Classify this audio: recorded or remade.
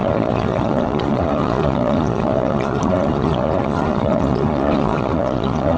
remade